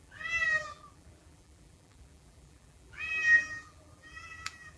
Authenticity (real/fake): fake